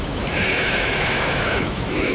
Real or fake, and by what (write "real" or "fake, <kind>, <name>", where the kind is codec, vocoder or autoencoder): fake, autoencoder, DAC-VAE